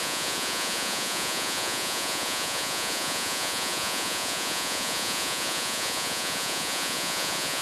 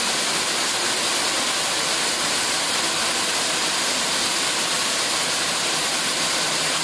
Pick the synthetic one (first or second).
first